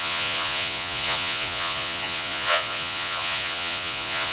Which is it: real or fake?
fake